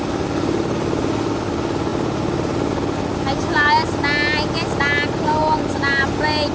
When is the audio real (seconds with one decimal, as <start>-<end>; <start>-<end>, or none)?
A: 0.0-6.5